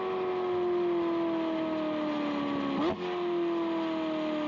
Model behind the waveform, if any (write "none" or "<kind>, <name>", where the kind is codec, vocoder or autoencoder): none